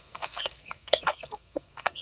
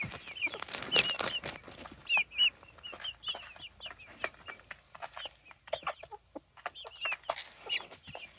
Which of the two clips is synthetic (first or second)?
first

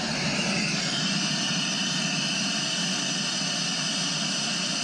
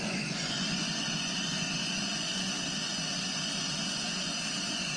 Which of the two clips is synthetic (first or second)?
second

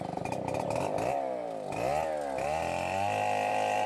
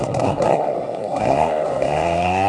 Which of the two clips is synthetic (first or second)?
second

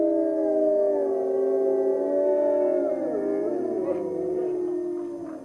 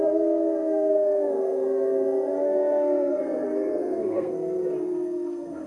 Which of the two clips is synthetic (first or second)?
second